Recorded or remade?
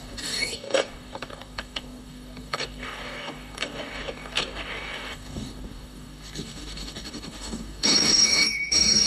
remade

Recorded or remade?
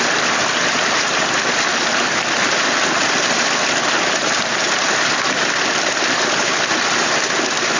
recorded